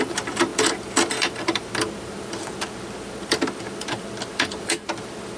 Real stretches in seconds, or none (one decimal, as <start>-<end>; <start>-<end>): none